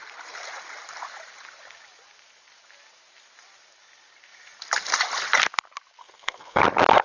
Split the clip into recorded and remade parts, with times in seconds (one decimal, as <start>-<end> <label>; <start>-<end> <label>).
0.0-6.0 recorded; 6.0-6.6 remade; 6.6-7.0 recorded